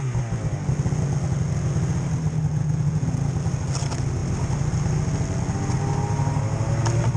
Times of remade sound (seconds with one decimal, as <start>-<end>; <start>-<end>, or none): 2.5-3.1